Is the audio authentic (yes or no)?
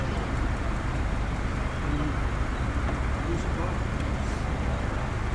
yes